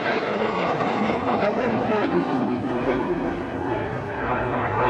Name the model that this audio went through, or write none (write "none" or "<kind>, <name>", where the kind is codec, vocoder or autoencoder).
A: codec, SNAC